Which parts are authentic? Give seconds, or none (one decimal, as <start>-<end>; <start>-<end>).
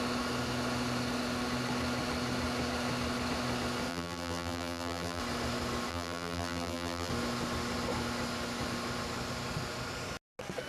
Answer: 0.0-3.9; 5.2-5.9; 7.1-10.7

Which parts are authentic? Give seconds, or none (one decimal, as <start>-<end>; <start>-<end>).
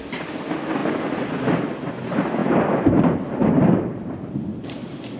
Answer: 0.0-2.4; 4.8-5.2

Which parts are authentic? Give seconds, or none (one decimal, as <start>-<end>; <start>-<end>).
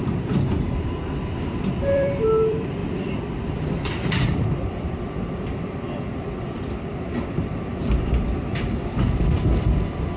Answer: 6.9-9.2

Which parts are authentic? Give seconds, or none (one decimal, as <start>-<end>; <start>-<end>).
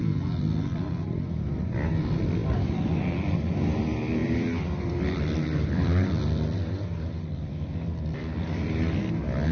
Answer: 0.0-2.4; 3.8-4.2; 9.0-9.5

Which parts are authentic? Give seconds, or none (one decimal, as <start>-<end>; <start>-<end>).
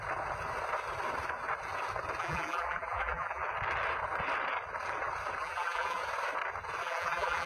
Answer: 0.0-2.2; 3.4-5.4; 6.0-6.8